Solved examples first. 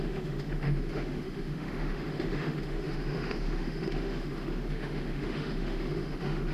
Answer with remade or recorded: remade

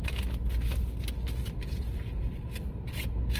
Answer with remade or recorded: recorded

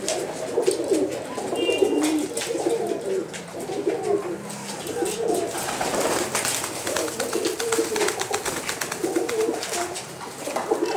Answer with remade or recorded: recorded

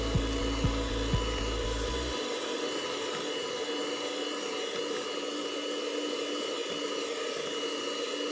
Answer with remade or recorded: recorded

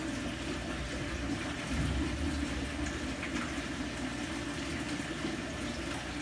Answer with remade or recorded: recorded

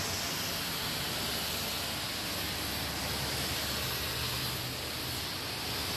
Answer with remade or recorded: recorded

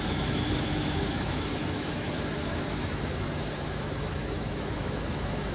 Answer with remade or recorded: remade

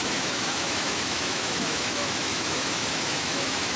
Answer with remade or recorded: remade